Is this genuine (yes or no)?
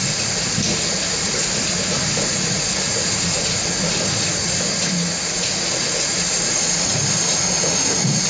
no